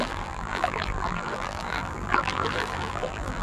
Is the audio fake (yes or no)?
yes